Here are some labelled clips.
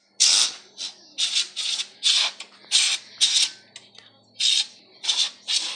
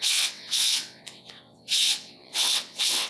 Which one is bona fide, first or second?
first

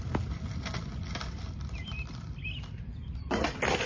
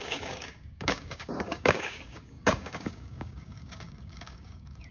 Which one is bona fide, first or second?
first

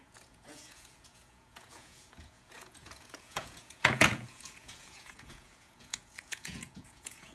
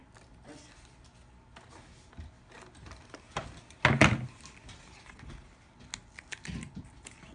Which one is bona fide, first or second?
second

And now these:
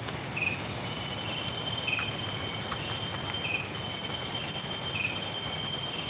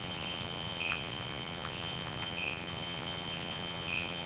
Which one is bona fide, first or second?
first